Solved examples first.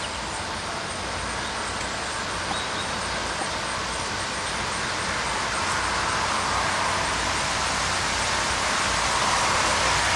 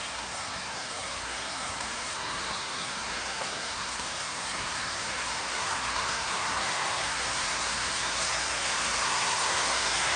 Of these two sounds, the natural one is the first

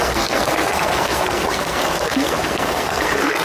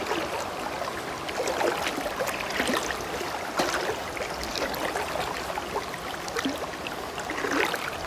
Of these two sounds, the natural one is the second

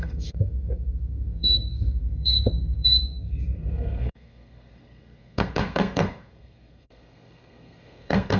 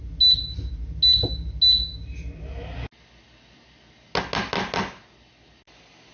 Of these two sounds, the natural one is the second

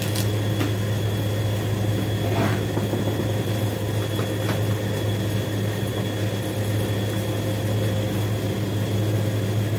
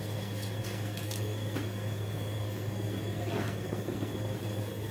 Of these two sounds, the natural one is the first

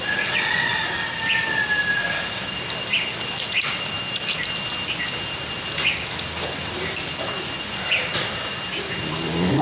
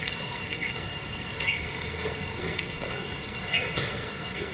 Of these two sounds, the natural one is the first